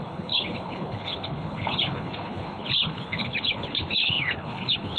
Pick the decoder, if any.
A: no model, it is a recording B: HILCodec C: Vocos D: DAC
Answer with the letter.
B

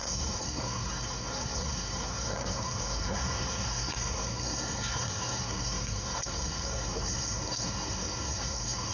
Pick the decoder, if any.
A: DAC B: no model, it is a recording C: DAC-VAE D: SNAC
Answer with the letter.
D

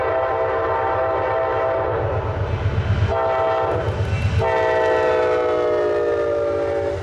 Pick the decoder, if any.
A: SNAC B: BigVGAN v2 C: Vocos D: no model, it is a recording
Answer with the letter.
D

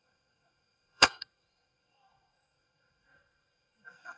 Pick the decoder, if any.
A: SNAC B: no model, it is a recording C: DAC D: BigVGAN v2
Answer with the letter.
A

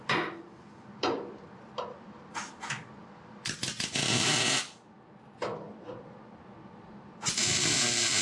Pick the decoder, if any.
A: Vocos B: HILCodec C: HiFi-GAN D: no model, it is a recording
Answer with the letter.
D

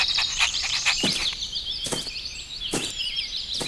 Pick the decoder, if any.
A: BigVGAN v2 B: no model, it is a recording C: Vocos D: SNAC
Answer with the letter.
A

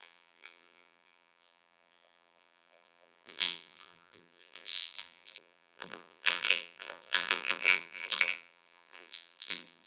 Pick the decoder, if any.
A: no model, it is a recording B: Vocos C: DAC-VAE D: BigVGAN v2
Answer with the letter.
D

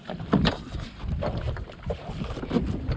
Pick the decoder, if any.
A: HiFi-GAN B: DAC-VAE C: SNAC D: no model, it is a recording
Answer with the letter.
D